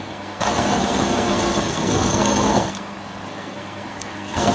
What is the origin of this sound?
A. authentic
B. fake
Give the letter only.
B